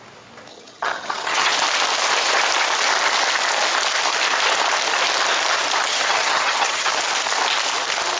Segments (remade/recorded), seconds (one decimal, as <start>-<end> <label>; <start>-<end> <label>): 0.0-0.5 recorded; 0.5-1.5 remade; 1.5-5.9 recorded; 5.9-6.9 remade; 6.9-8.2 recorded